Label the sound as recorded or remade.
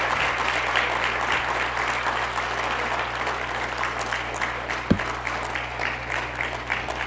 recorded